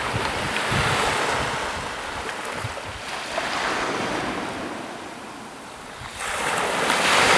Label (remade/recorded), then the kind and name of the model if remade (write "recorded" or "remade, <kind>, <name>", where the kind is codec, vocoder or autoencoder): recorded